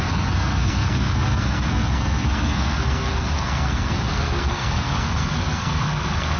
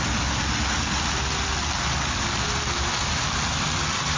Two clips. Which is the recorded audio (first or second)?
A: second